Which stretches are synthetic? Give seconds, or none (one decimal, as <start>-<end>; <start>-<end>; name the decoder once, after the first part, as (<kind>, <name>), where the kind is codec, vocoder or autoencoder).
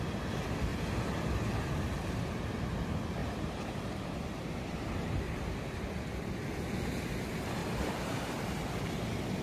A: 3.2-5.2 (vocoder, BigVGAN v2); 7.6-8.2